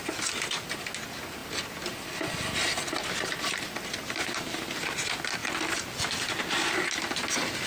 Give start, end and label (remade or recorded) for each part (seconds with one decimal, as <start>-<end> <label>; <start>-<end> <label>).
0.0-3.9 recorded; 3.9-4.6 remade; 4.6-7.7 recorded